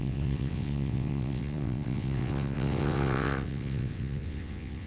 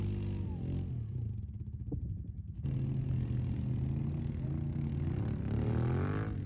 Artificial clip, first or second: first